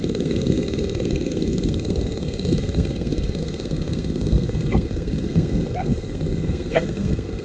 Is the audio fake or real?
fake